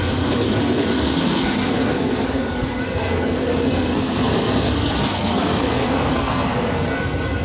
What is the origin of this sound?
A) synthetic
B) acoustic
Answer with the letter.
A